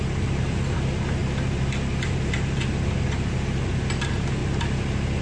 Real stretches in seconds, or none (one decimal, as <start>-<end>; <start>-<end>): 0.0-5.2